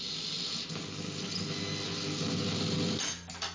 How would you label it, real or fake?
real